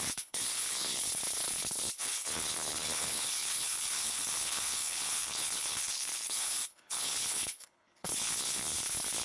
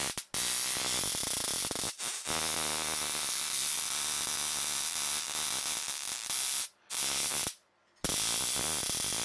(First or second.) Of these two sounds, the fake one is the first